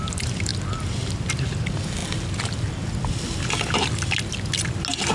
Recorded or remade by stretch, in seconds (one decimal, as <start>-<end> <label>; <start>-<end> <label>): 0.0-5.1 recorded